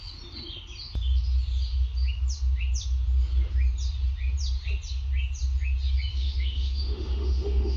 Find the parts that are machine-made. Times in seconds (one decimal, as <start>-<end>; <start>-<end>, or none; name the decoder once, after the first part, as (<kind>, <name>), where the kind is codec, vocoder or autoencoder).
6.1-7.8 (autoencoder, DAC-VAE)